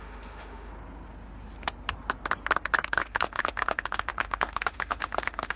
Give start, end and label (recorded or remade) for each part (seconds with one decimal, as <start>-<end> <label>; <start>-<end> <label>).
0.0-0.7 remade; 0.7-2.9 recorded; 2.9-5.6 remade

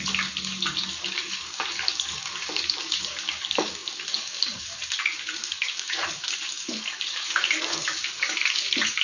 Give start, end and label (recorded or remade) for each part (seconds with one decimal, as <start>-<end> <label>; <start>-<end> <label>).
0.0-9.0 remade

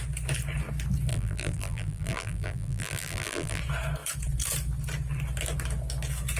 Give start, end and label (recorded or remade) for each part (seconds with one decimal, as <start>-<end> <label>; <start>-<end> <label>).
0.0-1.1 recorded; 1.1-3.6 remade; 3.6-6.4 recorded

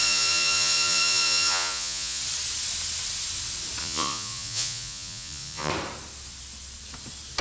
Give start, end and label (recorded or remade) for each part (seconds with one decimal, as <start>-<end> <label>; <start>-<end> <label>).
0.0-2.2 remade; 2.2-3.8 recorded; 3.8-5.7 remade; 5.7-7.4 recorded